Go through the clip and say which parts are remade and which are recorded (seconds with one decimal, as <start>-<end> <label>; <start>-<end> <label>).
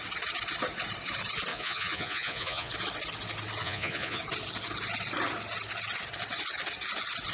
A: 0.0-1.5 recorded; 1.5-2.7 remade; 2.7-3.6 recorded; 3.6-4.2 remade; 4.2-7.3 recorded